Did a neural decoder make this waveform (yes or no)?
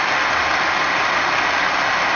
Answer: no